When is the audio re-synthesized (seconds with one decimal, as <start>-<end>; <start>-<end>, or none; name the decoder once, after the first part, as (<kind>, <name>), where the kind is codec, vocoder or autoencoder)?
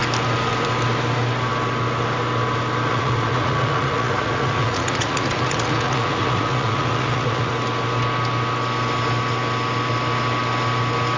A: 2.9-7.5 (vocoder, Vocos)